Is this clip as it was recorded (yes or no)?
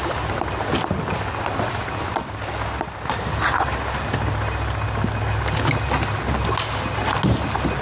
yes